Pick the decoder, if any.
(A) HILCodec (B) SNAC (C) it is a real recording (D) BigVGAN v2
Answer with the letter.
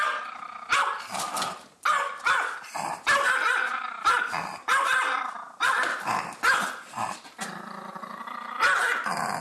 C